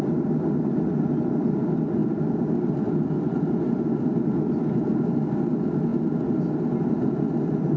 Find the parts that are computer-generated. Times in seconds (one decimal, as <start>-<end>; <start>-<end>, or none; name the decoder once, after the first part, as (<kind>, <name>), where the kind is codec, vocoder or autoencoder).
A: none